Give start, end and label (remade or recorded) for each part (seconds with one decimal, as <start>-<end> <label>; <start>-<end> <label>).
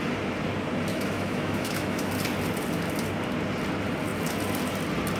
0.0-0.9 recorded; 0.9-2.1 remade; 2.1-5.2 recorded